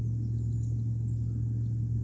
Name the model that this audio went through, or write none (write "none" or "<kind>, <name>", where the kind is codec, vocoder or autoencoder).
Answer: none